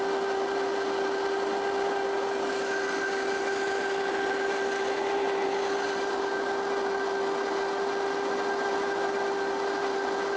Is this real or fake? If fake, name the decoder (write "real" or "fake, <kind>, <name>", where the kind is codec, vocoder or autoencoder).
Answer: real